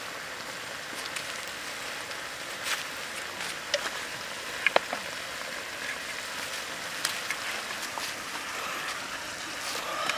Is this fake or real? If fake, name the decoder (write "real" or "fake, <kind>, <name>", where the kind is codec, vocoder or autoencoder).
real